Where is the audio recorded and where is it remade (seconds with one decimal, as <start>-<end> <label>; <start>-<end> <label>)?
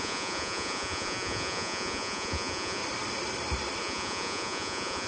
0.0-2.8 remade; 2.8-3.8 recorded; 3.8-5.1 remade